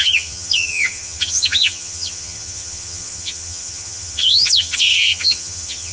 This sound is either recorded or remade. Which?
remade